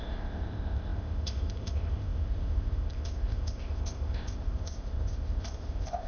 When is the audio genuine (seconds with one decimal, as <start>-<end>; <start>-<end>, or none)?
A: none